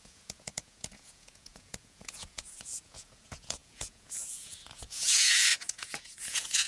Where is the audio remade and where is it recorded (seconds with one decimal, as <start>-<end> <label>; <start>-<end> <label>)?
0.0-6.7 remade